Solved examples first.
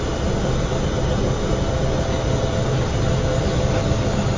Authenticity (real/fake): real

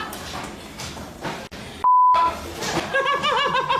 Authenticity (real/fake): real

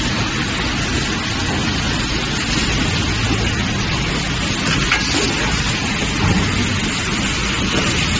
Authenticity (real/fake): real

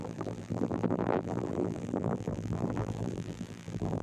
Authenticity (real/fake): fake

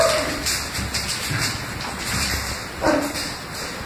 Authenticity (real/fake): real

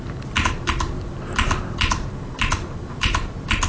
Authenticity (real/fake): real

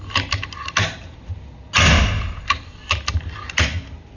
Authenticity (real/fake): real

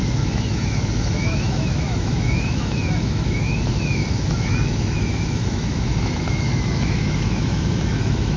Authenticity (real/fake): fake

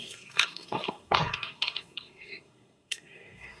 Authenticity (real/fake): fake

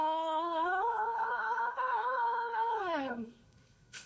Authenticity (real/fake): fake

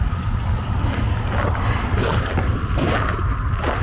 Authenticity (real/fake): real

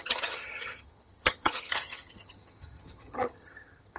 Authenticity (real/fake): fake